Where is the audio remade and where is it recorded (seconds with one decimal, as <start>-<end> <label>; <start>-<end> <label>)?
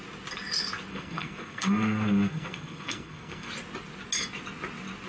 0.0-0.9 recorded; 0.9-3.5 remade; 3.5-5.1 recorded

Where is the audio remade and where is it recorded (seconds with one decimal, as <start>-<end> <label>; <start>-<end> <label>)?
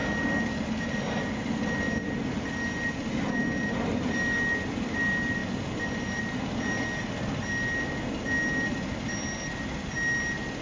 0.0-10.6 recorded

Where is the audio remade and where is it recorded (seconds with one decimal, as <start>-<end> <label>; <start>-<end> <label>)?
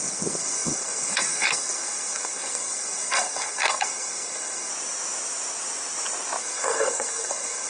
0.0-4.7 remade; 4.7-6.4 recorded; 6.4-7.7 remade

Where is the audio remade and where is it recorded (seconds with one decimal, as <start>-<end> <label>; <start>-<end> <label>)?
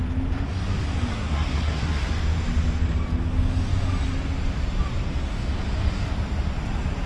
0.0-1.1 recorded; 1.1-2.1 remade; 2.1-7.1 recorded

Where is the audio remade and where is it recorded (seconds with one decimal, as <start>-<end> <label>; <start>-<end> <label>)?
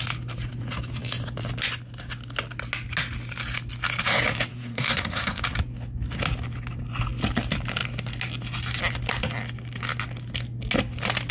0.0-4.5 recorded; 4.5-5.4 remade; 5.4-11.3 recorded